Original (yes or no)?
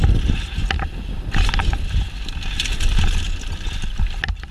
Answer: yes